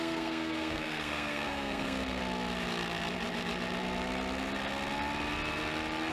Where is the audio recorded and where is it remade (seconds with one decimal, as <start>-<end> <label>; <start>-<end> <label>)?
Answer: 0.0-2.2 remade; 2.2-6.1 recorded